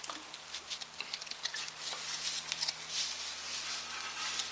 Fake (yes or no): no